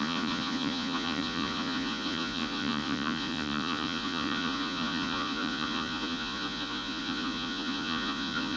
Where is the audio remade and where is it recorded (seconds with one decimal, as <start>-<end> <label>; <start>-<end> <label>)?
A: 0.0-8.6 remade